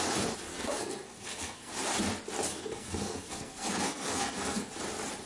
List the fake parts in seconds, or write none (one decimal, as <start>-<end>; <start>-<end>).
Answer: 0.5-1.7; 2.5-4.7